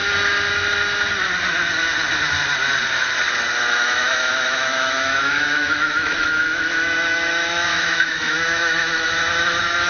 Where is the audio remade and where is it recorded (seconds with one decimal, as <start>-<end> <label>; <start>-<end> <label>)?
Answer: 0.0-3.7 recorded; 3.7-9.9 remade